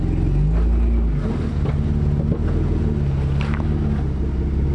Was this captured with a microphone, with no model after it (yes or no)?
yes